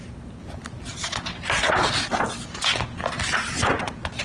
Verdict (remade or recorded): recorded